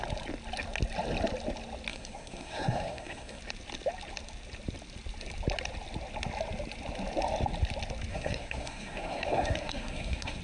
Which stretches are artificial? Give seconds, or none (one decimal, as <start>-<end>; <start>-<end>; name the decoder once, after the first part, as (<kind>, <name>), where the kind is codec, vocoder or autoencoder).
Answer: 1.9-3.4 (codec, SNAC); 8.1-10.4